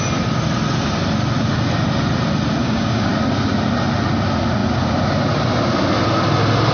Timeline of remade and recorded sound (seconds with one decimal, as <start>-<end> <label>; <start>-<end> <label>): 0.0-2.6 recorded; 2.6-3.1 remade; 3.1-6.7 recorded